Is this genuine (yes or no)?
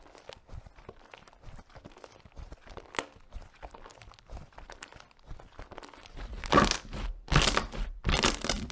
yes